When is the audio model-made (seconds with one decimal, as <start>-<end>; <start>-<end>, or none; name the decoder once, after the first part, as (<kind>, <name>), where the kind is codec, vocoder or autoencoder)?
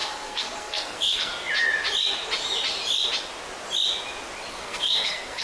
0.0-1.3 (codec, SNAC); 4.5-5.4